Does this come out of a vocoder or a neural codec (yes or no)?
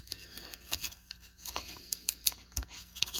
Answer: yes